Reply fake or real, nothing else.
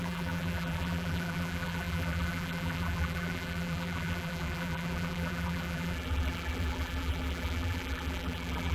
fake